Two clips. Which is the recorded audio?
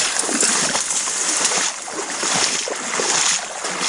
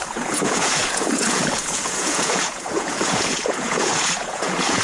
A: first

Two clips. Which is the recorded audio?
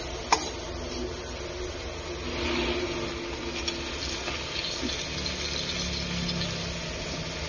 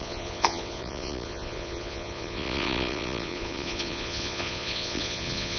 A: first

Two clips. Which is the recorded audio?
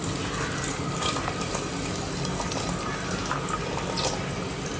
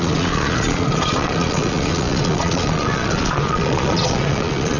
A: first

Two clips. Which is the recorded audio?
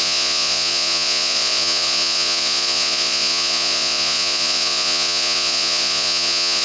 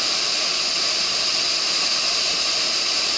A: second